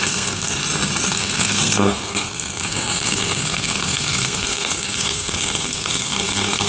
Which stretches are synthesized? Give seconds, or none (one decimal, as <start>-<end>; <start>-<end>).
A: 0.0-0.6; 1.1-6.7